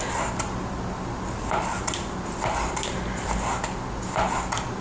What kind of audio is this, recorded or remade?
recorded